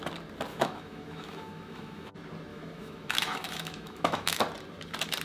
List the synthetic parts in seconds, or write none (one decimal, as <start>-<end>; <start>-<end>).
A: 0.5-2.1; 2.5-4.4